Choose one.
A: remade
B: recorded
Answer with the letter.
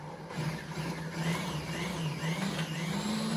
A